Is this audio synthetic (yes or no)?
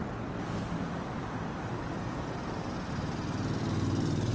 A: no